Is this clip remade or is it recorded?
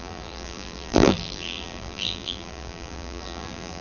remade